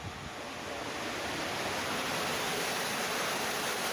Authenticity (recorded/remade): recorded